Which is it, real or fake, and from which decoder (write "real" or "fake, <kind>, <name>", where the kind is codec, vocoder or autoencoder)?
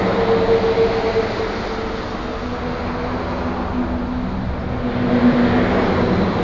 real